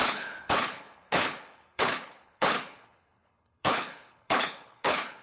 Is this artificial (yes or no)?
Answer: yes